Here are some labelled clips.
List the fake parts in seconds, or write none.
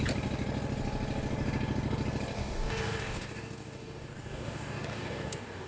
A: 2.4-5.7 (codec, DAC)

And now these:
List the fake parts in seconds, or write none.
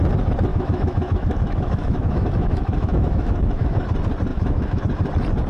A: 0.5-3.8 (autoencoder, DAC-VAE); 4.3-4.8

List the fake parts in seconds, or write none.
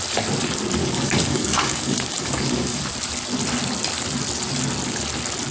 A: 0.8-2.8 (codec, DAC)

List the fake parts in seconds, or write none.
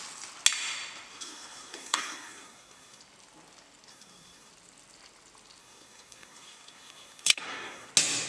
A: 1.1-3.0 (codec, SNAC); 3.9-4.5; 5.6-7.9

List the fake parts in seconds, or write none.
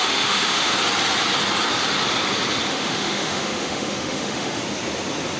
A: 0.0-0.7 (autoencoder, DAC-VAE); 2.7-4.6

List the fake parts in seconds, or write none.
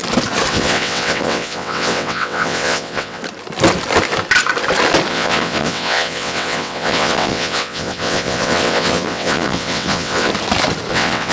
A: 0.5-3.2 (vocoder, WaveNeXt); 5.1-10.3; 10.9-11.3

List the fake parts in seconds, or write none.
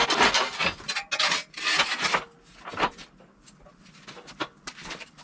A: none